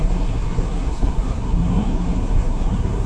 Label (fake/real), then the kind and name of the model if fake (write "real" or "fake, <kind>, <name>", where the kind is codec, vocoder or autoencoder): fake, codec, SNAC